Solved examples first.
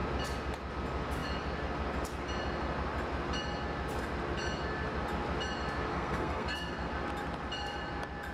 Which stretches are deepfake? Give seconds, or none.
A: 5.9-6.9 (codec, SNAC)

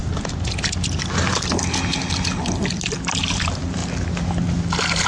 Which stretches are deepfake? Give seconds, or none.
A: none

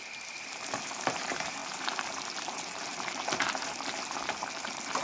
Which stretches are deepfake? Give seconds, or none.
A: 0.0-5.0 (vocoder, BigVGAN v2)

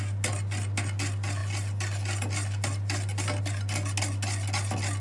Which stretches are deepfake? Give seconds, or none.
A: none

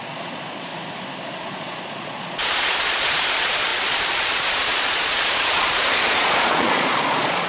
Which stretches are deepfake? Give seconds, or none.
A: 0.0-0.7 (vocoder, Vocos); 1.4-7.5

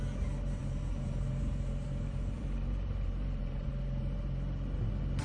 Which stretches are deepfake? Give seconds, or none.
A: 0.6-3.7 (vocoder, BigVGAN v2)